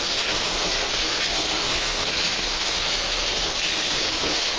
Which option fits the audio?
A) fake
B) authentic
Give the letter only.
A